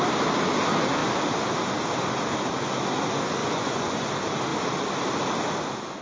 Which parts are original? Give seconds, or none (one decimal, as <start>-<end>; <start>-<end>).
0.0-3.4; 4.1-6.0